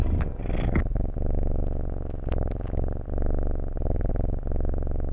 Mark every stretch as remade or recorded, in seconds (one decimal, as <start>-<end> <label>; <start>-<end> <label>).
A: 0.0-5.1 recorded